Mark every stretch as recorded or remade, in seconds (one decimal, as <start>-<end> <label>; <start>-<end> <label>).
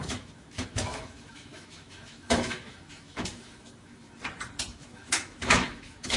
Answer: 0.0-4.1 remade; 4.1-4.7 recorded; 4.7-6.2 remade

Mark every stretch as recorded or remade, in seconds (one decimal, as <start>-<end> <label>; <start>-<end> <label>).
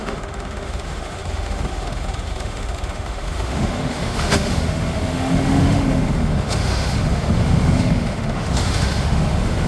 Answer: 0.0-9.7 remade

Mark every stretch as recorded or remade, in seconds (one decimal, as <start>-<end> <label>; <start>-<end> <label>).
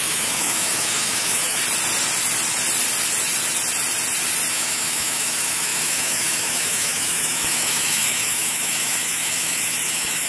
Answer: 0.0-1.6 remade; 1.6-4.5 recorded; 4.5-10.3 remade